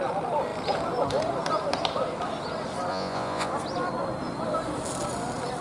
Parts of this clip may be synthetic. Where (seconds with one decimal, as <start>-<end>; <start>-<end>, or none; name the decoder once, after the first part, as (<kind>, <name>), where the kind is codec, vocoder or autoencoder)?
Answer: 2.9-3.5 (vocoder, Vocos)